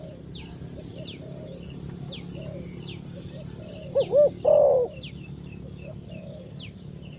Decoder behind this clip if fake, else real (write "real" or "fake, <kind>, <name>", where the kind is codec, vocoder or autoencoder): real